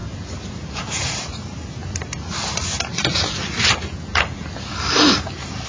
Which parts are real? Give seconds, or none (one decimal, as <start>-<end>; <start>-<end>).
0.0-0.7; 1.8-5.2